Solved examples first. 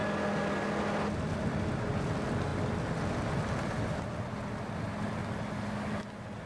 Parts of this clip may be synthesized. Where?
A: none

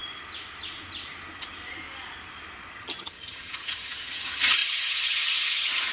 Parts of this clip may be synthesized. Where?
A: 2.7-5.9 (vocoder, HiFi-GAN)

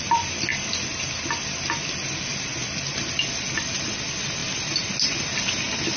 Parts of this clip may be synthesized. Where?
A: none

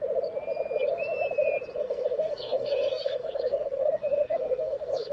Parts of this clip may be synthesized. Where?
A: 1.8-5.1 (codec, SNAC)

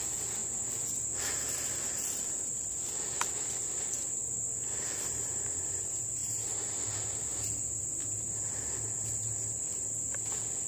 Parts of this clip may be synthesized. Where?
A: none

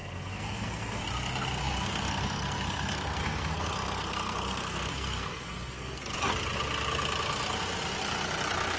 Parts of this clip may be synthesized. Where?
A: 0.0-1.0 (codec, SNAC); 1.6-6.3

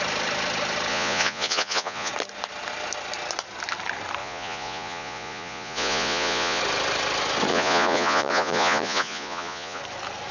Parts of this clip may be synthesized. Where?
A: 0.9-2.1 (vocoder, Vocos); 4.2-6.6; 7.5-9.8

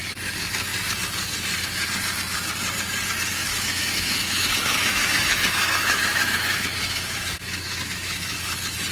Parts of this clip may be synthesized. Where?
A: 3.3-8.4 (autoencoder, DAC-VAE)